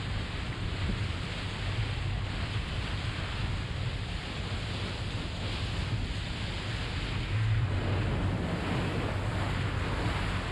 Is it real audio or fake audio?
real